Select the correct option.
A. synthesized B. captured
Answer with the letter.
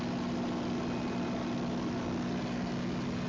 B